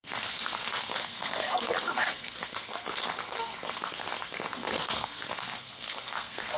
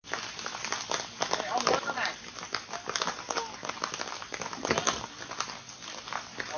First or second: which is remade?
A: first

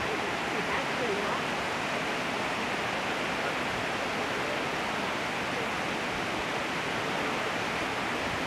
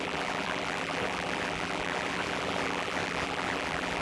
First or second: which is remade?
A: second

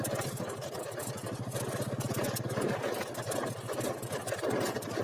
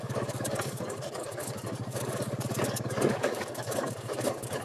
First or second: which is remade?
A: second